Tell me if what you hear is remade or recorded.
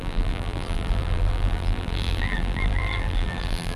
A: remade